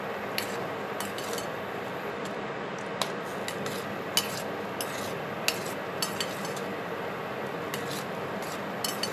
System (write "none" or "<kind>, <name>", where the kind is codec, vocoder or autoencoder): none